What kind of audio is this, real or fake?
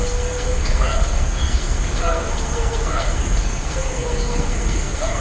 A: fake